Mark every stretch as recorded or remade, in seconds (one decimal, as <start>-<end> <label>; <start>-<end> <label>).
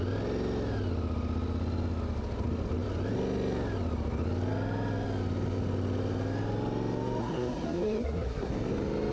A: 0.0-7.2 recorded; 7.2-8.5 remade; 8.5-9.1 recorded